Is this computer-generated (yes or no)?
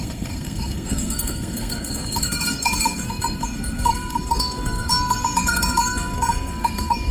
yes